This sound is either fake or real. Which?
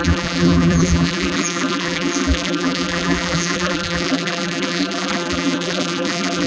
fake